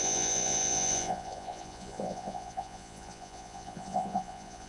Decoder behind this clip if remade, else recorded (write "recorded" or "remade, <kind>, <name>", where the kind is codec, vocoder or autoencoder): remade, vocoder, Vocos